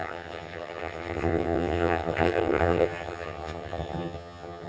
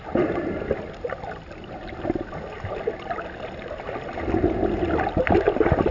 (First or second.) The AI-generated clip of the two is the first